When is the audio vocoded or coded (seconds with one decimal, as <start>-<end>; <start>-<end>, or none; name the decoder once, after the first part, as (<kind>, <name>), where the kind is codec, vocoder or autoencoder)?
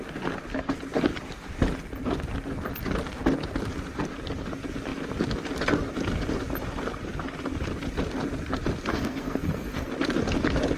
8.9-9.9 (codec, SNAC)